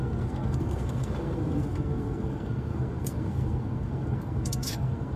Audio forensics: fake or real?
fake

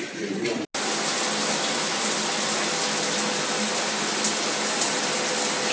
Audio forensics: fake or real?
real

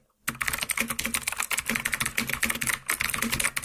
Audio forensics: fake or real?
real